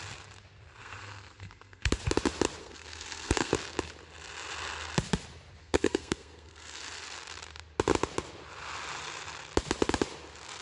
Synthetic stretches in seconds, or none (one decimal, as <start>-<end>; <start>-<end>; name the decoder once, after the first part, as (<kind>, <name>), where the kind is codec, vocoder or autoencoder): 0.8-1.9 (codec, SNAC); 2.6-3.5; 5.6-6.8